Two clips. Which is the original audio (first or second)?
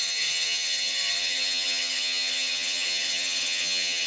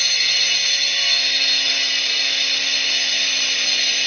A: second